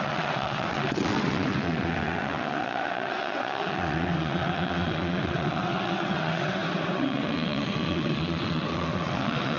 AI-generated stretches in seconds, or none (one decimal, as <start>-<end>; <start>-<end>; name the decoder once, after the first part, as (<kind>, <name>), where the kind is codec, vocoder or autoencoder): 0.0-9.6 (vocoder, WaveNeXt)